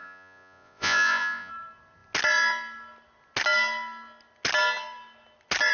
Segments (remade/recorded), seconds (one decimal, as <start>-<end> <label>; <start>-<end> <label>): 0.0-1.5 remade; 1.5-5.7 recorded